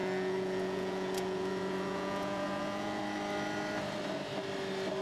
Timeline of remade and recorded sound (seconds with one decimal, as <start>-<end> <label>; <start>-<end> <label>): 0.0-3.0 remade; 3.0-5.0 recorded